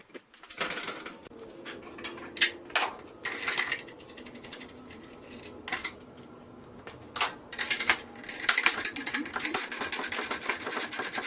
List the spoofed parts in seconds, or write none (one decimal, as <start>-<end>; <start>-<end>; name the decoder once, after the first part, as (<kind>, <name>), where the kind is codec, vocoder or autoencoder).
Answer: 5.8-6.8 (codec, DAC)